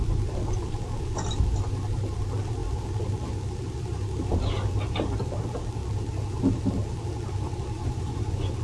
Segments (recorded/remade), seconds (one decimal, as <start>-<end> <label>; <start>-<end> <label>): 0.0-7.8 recorded; 7.8-8.6 remade

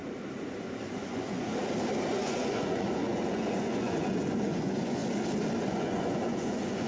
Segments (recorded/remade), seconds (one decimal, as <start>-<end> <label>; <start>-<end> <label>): 0.0-1.1 recorded; 1.1-1.5 remade; 1.5-2.1 recorded; 2.1-5.0 remade; 5.0-5.6 recorded; 5.6-6.9 remade

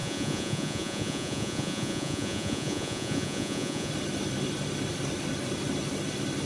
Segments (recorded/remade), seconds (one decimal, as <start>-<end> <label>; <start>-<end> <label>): 0.0-3.9 remade; 3.9-6.5 recorded